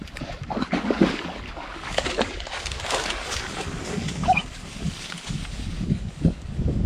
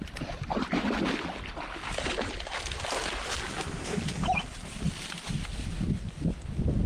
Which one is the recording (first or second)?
second